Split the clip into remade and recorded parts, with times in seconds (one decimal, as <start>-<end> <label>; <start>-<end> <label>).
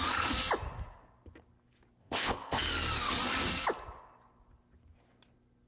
0.0-2.0 recorded; 2.0-2.6 remade; 2.6-5.7 recorded